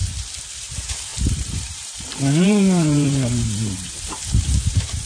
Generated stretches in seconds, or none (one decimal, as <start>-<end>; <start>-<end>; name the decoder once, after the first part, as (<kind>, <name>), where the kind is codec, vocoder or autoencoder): 0.5-5.1 (vocoder, BigVGAN v2)